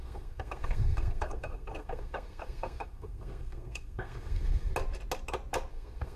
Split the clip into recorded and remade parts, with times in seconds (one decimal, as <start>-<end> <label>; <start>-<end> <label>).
0.0-4.7 remade; 4.7-5.7 recorded; 5.7-6.2 remade